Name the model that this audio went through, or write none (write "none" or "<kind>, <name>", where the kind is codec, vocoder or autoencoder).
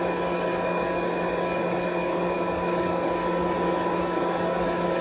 codec, DAC